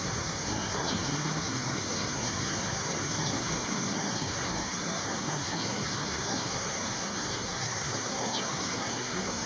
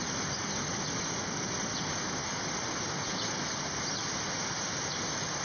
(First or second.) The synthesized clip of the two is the first